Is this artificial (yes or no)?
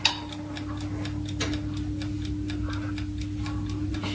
no